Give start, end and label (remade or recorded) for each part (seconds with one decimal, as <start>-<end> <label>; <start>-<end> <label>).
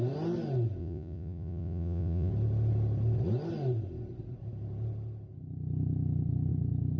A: 0.0-0.8 recorded; 0.8-2.3 remade; 2.3-7.0 recorded